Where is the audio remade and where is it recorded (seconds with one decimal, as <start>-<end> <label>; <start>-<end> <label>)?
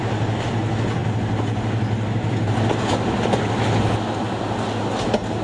0.0-5.4 recorded